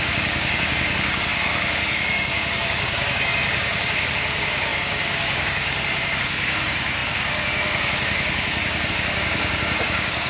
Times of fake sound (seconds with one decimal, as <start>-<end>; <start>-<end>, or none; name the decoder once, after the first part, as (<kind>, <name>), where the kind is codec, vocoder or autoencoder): 0.0-10.3 (codec, DAC)